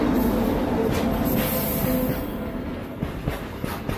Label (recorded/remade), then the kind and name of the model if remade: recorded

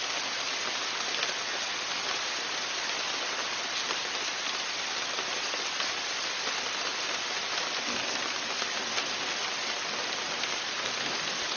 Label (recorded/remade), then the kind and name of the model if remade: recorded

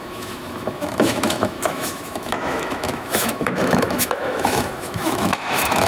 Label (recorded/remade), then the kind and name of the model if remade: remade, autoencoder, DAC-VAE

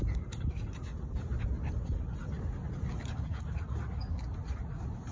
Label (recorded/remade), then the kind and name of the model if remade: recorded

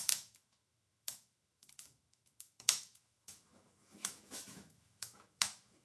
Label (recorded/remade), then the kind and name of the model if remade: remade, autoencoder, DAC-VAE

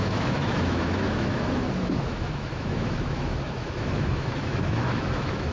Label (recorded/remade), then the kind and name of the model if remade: remade, autoencoder, DAC-VAE